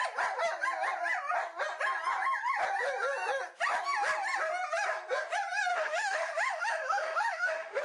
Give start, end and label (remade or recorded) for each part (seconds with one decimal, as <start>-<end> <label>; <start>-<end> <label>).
0.0-5.7 recorded; 5.7-7.8 remade